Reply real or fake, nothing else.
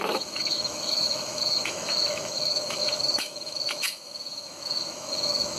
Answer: fake